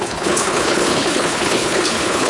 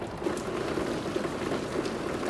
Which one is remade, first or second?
first